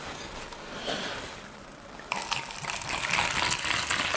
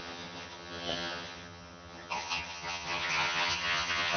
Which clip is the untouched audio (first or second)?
first